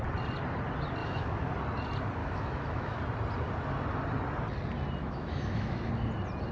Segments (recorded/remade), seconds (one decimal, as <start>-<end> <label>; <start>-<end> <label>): 0.0-1.0 recorded; 1.0-1.5 remade; 1.5-2.2 recorded; 2.2-3.0 remade; 3.0-5.0 recorded; 5.0-5.9 remade; 5.9-6.5 recorded